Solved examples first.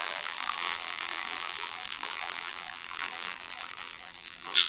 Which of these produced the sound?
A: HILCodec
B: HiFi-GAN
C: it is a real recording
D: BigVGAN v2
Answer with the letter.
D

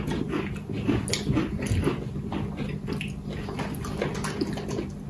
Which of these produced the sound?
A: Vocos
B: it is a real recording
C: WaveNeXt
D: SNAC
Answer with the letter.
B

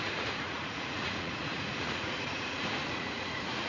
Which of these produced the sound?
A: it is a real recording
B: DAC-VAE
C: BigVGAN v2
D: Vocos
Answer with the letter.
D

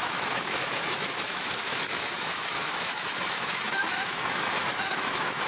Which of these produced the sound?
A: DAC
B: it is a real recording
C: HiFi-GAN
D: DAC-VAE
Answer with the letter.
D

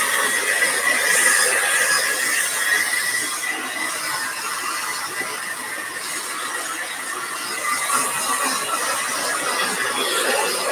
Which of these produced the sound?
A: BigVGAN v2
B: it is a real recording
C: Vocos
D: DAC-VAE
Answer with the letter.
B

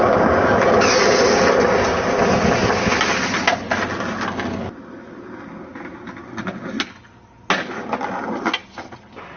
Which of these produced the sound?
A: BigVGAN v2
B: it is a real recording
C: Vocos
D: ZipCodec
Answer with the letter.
B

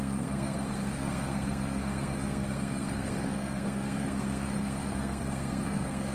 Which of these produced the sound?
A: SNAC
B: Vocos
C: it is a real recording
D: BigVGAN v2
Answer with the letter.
A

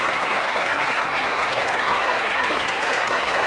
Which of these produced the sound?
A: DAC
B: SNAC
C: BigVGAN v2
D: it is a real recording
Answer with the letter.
B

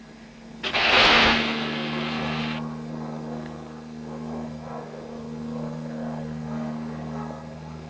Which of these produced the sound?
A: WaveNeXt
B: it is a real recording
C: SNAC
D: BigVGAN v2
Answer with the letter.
C